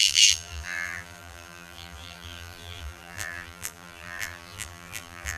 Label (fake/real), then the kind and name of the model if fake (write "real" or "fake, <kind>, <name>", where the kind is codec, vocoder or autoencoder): fake, vocoder, BigVGAN v2